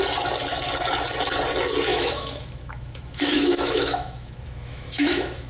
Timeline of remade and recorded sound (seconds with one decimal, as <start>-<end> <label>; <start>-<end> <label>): 0.0-1.9 recorded; 1.9-5.5 remade